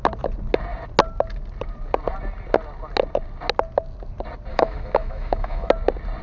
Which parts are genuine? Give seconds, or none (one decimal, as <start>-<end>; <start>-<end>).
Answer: 0.0-4.5; 5.7-6.2